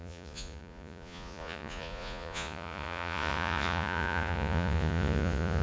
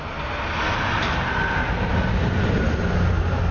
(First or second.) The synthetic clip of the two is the first